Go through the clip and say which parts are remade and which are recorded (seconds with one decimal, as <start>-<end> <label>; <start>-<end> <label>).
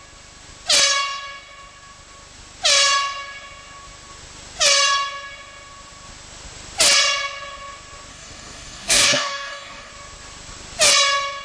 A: 0.0-8.1 recorded; 8.1-9.9 remade; 9.9-11.4 recorded